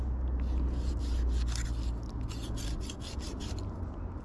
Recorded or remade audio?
recorded